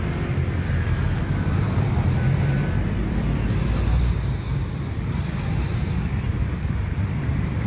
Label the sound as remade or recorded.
remade